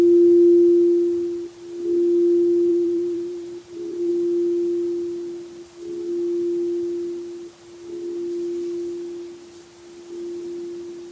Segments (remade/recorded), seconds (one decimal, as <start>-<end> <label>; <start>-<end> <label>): 0.0-2.7 recorded; 2.7-4.1 remade; 4.1-11.1 recorded